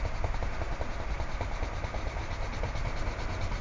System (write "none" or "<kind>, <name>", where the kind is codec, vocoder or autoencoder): none